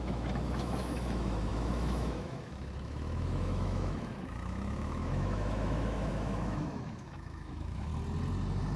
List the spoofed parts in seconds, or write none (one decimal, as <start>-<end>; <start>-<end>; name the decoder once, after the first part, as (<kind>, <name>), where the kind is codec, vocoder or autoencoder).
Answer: 0.0-7.9 (autoencoder, DAC-VAE)